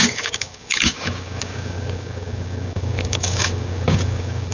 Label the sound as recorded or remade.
remade